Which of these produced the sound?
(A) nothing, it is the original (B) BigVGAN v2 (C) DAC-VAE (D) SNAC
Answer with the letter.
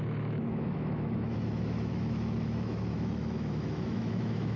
C